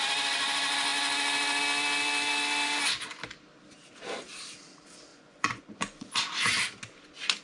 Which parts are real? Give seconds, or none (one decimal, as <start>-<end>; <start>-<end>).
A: 0.0-5.1; 6.1-7.4